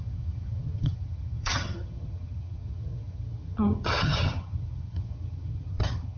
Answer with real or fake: fake